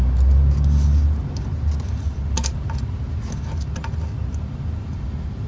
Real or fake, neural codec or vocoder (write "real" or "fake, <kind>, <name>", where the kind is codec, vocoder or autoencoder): real